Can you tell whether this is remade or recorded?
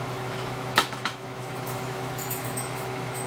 remade